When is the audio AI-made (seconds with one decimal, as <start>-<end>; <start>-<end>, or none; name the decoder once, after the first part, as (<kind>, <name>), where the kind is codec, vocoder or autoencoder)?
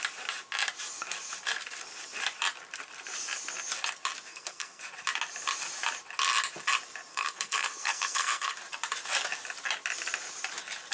4.3-4.8 (codec, SNAC); 7.1-8.5